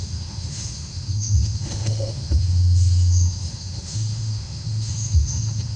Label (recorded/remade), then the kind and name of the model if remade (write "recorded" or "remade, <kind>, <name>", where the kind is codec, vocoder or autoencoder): remade, autoencoder, DAC-VAE